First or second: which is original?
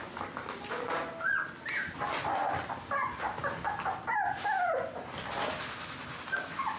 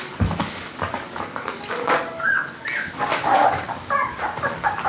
first